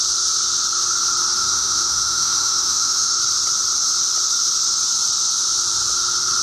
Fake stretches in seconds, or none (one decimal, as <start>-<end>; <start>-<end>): 1.4-3.2